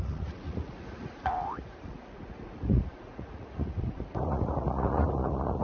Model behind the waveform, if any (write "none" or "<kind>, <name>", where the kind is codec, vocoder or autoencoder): vocoder, Vocos